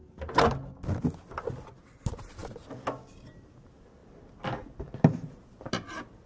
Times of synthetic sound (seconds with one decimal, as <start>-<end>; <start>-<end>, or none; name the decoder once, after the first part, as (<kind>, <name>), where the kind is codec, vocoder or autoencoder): none